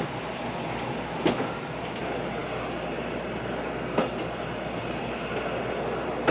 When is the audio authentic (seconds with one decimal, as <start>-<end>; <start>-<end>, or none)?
0.0-6.3

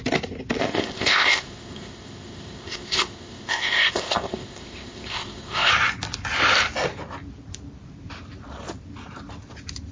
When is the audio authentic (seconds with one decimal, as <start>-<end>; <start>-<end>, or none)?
0.0-0.6; 5.7-9.9

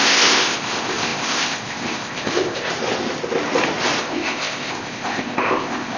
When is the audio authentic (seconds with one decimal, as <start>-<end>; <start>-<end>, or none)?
2.7-4.0

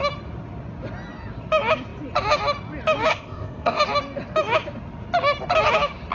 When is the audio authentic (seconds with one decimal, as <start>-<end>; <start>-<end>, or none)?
0.0-3.1; 3.8-6.1

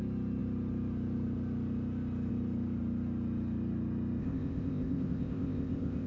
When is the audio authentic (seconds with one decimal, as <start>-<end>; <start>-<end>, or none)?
0.0-4.2

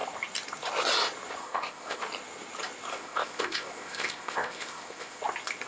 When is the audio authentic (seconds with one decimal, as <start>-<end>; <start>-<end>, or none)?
0.0-1.4; 2.0-2.9; 5.2-5.7